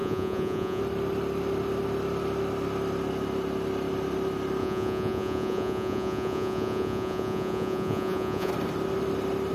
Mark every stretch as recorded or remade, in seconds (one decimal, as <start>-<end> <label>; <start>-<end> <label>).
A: 0.0-0.8 remade; 0.8-4.6 recorded; 4.6-8.5 remade; 8.5-9.5 recorded

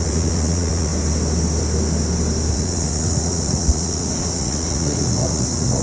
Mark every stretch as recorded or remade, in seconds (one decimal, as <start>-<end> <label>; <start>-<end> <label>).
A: 0.0-0.9 remade; 0.9-2.5 recorded; 2.5-5.8 remade

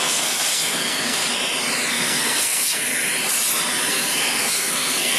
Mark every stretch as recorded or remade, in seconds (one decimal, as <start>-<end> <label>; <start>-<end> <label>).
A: 0.0-1.2 remade; 1.2-1.9 recorded; 1.9-2.9 remade; 2.9-3.9 recorded; 3.9-5.2 remade

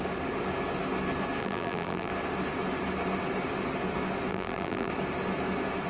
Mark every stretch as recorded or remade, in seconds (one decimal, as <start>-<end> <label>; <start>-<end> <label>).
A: 0.0-1.4 recorded; 1.4-2.1 remade; 2.1-4.3 recorded; 4.3-4.9 remade; 4.9-5.9 recorded

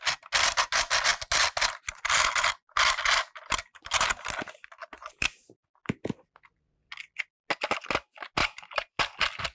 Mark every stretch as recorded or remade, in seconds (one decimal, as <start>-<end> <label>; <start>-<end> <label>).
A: 0.0-8.4 recorded; 8.4-9.0 remade; 9.0-9.5 recorded